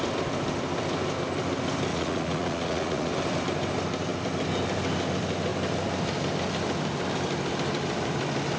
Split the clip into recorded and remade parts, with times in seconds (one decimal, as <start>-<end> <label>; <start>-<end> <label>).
0.0-1.9 recorded; 1.9-3.1 remade; 3.1-8.6 recorded